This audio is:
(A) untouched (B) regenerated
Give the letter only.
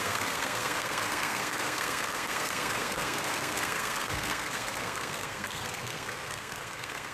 B